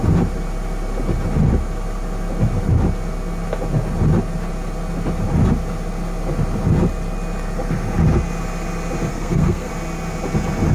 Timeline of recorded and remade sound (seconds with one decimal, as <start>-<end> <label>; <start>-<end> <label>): 0.0-9.1 recorded; 9.1-9.7 remade; 9.7-10.7 recorded